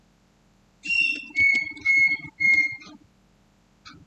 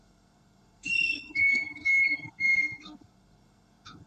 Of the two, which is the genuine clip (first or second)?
first